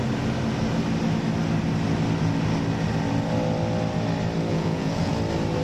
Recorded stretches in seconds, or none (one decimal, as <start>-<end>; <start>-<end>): 0.0-4.5; 5.1-5.6